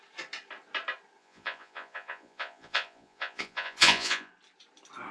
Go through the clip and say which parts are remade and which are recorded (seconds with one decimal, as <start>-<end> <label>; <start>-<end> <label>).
0.0-1.2 recorded; 1.2-4.3 remade; 4.3-5.1 recorded